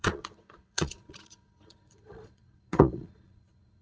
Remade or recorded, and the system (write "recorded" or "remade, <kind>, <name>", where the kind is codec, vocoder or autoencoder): remade, vocoder, Vocos